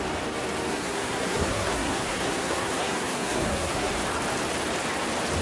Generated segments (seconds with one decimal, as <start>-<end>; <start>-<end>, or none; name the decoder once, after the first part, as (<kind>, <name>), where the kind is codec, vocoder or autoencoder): 0.7-3.9 (codec, SNAC)